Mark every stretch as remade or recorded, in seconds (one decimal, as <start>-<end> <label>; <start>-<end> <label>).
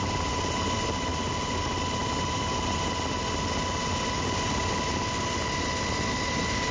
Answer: 0.0-6.7 recorded